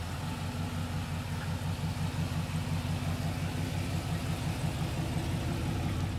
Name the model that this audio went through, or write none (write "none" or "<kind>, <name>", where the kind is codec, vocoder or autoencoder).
none